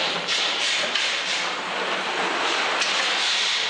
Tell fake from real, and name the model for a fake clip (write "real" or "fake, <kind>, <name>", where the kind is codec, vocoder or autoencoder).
real